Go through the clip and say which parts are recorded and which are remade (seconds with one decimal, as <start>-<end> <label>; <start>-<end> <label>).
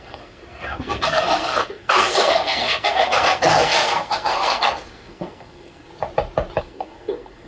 0.0-5.9 remade; 5.9-6.6 recorded; 6.6-7.5 remade